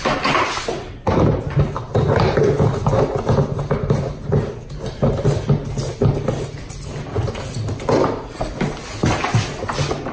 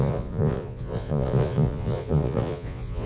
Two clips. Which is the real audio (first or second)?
first